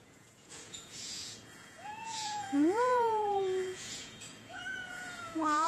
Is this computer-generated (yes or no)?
yes